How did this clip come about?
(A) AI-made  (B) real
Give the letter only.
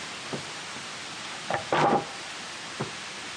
B